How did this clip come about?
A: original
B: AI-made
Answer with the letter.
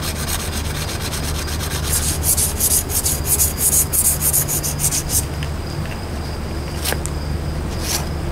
A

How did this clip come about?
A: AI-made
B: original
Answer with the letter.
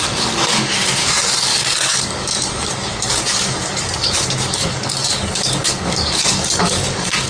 A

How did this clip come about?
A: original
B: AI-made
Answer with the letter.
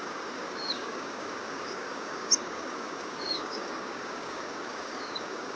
B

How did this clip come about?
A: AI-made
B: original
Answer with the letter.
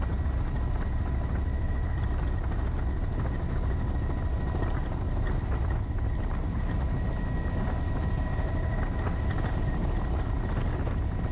B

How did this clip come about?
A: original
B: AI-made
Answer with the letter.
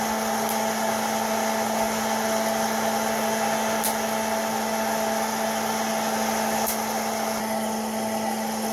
A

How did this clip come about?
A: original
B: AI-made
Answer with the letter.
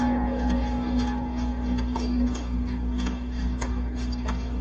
B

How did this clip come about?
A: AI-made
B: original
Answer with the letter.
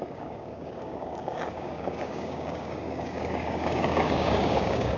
A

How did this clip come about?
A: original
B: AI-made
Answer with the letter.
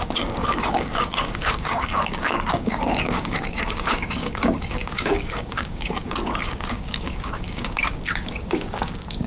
B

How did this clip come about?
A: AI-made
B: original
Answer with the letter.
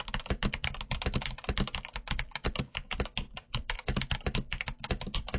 B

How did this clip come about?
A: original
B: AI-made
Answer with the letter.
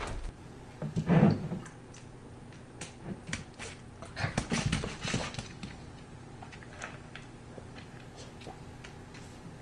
A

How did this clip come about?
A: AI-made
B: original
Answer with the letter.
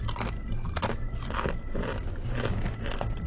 B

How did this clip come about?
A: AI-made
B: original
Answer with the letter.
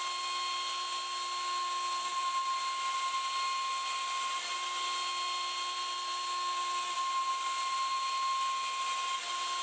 B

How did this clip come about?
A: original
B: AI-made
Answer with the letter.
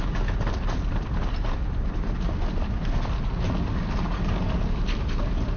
A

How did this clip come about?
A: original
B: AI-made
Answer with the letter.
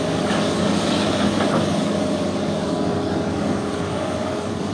B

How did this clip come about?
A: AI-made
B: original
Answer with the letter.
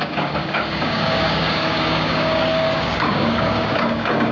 A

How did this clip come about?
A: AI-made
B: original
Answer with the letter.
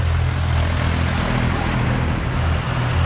B